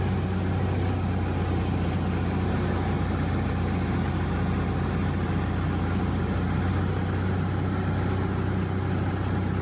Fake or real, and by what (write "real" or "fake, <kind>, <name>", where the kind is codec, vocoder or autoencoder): real